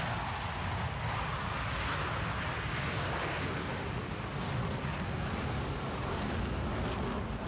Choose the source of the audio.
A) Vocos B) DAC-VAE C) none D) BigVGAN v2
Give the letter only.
C